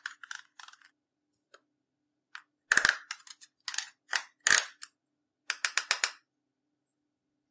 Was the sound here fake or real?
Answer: real